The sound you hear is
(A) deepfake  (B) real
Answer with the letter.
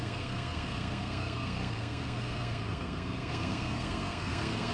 A